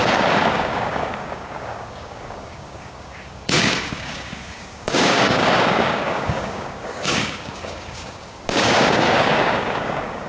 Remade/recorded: remade